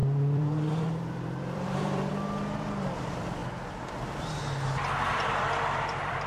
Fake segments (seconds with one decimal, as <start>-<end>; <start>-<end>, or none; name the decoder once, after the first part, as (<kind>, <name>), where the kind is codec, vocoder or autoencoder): 0.0-2.1 (vocoder, BigVGAN v2); 5.1-6.3